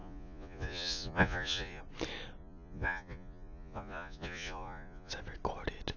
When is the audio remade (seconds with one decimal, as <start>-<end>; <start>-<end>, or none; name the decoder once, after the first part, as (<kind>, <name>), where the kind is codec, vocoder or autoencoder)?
0.0-1.8 (vocoder, Vocos); 2.4-5.1